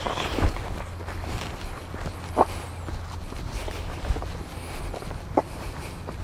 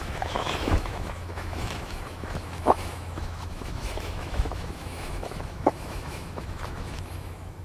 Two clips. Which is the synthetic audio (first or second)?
second